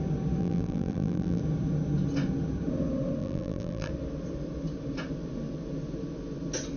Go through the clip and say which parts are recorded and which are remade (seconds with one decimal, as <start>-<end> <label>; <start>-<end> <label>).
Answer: 0.0-0.4 recorded; 0.4-1.4 remade; 1.4-3.2 recorded; 3.2-3.9 remade; 3.9-6.8 recorded